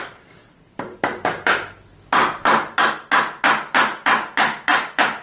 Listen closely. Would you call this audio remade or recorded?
recorded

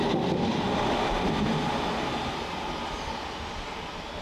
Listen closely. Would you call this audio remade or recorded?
recorded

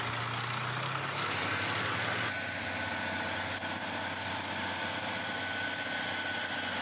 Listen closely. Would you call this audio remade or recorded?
recorded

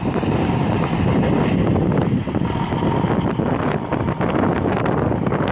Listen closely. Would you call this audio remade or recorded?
recorded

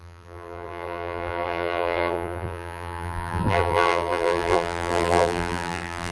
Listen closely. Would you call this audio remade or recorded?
remade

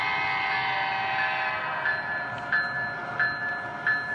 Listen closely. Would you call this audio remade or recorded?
recorded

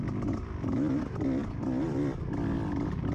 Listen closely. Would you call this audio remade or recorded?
recorded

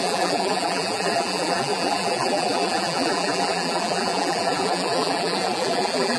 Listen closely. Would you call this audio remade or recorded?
remade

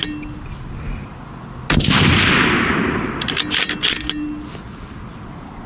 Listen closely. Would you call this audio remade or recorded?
recorded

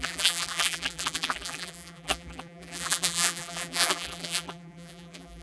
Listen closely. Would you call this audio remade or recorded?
remade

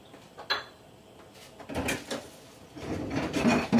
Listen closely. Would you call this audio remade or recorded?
recorded